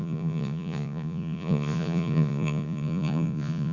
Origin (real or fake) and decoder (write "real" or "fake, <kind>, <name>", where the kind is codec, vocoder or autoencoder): fake, vocoder, Vocos